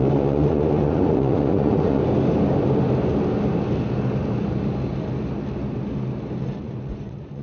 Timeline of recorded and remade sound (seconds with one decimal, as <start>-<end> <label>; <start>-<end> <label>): 0.0-2.0 remade; 2.0-6.4 recorded; 6.4-7.4 remade